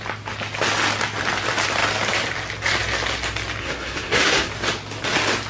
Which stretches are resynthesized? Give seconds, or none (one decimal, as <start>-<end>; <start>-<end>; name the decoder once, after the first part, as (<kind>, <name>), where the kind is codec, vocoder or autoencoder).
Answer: 3.6-4.5 (codec, SNAC)